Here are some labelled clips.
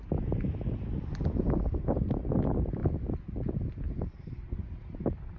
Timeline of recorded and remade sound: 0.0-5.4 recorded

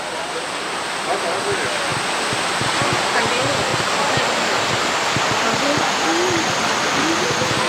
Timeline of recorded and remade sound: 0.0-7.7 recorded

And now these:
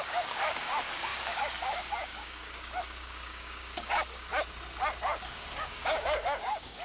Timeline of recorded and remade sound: 0.0-4.3 remade; 4.3-5.2 recorded; 5.2-6.8 remade